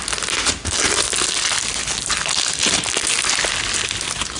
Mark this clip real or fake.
real